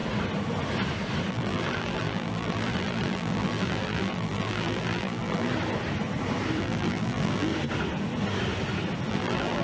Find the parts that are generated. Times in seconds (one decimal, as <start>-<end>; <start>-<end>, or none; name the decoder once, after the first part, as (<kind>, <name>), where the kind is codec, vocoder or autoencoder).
1.3-5.5 (vocoder, BigVGAN v2); 6.6-7.5; 9.1-9.6